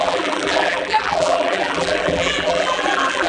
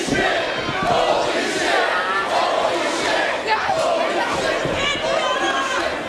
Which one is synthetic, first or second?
first